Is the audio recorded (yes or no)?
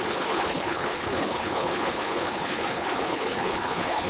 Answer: no